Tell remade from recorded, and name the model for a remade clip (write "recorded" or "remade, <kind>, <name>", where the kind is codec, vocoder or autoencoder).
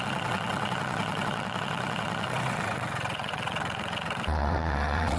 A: remade, vocoder, WaveNeXt